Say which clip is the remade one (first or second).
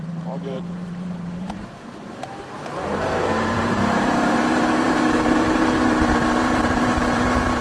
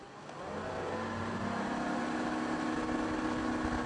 first